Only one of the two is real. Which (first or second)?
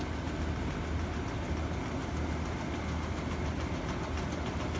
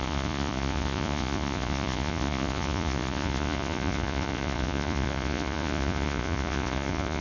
first